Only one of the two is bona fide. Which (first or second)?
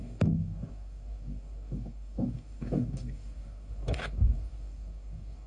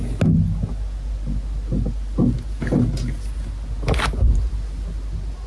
second